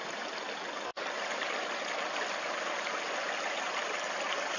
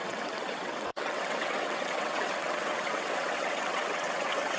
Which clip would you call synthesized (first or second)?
second